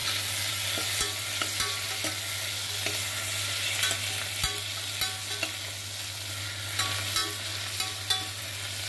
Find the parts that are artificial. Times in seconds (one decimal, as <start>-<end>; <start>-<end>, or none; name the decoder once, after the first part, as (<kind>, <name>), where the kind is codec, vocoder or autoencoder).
none

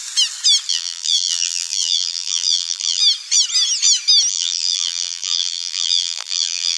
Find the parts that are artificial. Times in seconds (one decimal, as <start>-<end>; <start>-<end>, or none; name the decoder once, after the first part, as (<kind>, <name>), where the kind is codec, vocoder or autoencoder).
0.7-3.0 (vocoder, BigVGAN v2); 4.3-6.8